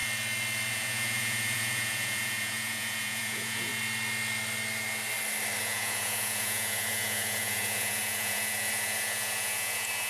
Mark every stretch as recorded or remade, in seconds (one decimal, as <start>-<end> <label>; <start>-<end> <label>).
0.0-0.7 recorded; 0.7-3.7 remade; 3.7-5.6 recorded; 5.6-10.1 remade

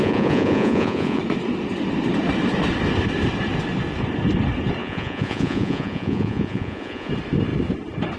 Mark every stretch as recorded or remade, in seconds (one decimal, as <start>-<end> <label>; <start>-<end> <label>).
0.0-1.2 remade; 1.2-4.8 recorded; 4.8-7.1 remade; 7.1-8.2 recorded